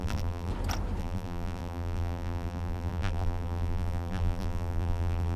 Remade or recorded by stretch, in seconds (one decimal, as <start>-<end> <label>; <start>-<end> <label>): 0.0-0.5 remade; 0.5-1.0 recorded; 1.0-5.4 remade